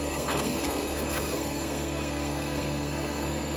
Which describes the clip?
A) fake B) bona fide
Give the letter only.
A